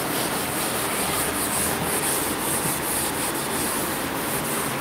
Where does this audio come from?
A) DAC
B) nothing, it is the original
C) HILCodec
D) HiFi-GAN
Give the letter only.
B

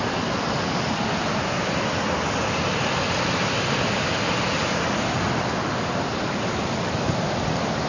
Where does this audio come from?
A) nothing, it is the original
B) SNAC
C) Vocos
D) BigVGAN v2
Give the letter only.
A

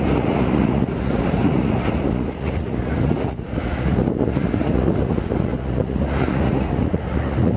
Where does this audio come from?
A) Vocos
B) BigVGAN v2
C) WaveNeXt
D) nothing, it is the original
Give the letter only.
A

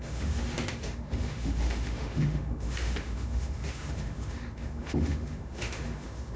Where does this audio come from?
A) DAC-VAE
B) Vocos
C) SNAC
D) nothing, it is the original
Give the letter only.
A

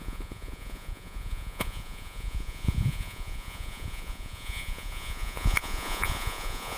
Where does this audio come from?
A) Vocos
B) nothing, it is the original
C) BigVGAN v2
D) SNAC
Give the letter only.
A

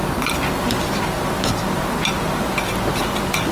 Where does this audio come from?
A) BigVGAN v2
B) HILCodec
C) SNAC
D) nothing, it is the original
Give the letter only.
D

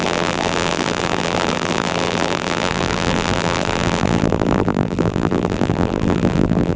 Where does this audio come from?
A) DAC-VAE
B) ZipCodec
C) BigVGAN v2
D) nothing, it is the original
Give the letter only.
C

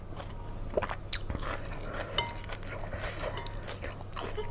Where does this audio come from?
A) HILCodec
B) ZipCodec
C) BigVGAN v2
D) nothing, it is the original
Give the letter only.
D